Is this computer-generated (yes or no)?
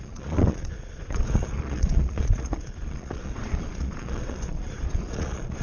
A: yes